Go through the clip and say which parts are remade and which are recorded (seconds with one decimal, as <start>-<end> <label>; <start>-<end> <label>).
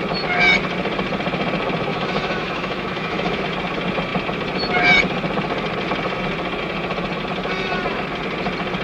0.0-1.9 recorded; 1.9-3.4 remade; 3.4-8.8 recorded